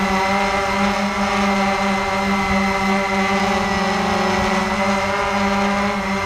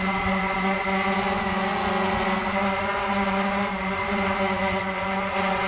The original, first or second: first